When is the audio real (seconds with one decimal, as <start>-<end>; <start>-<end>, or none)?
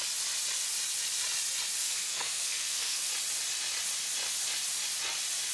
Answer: 0.0-1.8; 3.1-5.5